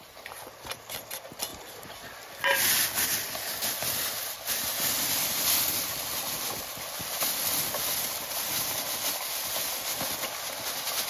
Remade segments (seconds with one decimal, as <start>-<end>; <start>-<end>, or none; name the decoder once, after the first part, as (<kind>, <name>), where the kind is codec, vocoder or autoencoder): none